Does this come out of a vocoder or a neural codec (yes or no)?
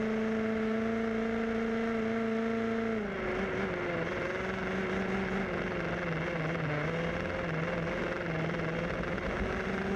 no